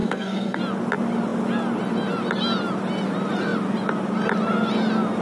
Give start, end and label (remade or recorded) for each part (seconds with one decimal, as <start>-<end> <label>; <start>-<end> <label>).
0.0-0.6 remade; 0.6-5.2 recorded